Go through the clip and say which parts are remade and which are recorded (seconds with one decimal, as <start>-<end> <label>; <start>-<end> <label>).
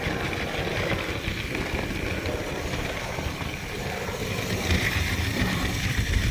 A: 0.0-1.3 remade; 1.3-4.9 recorded; 4.9-6.3 remade